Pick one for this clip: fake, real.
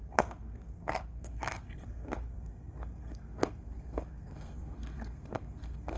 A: fake